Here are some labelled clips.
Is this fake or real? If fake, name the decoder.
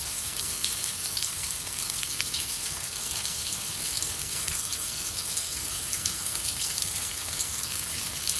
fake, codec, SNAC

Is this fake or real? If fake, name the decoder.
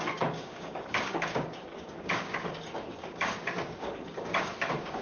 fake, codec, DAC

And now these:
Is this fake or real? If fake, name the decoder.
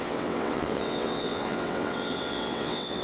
fake, vocoder, WaveNeXt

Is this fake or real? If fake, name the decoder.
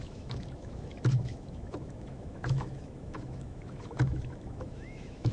fake, autoencoder, DAC-VAE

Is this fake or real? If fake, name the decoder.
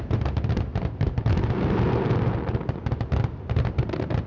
real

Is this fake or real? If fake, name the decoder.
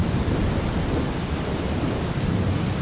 real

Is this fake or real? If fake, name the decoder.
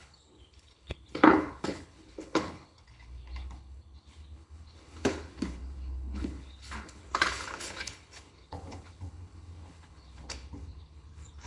fake, codec, HILCodec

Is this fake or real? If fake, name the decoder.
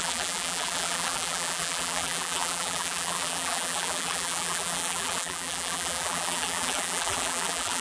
fake, vocoder, BigVGAN v2